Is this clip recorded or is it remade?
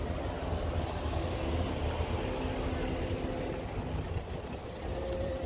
recorded